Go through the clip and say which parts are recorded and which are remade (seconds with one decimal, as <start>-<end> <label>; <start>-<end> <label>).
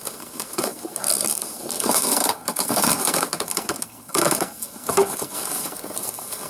0.0-6.5 remade